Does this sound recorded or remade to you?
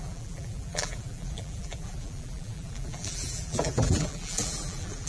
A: remade